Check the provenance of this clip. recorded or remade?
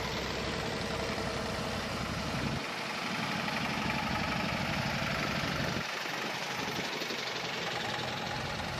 recorded